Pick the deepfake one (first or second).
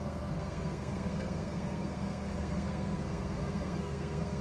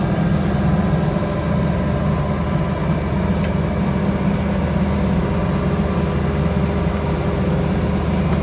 first